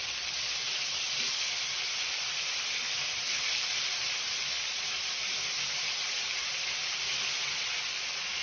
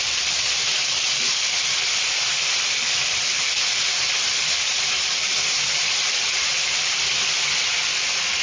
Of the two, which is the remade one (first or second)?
second